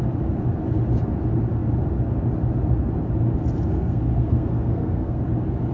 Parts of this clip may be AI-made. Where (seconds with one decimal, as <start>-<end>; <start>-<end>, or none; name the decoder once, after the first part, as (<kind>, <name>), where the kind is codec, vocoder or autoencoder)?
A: 3.7-5.2 (codec, SNAC)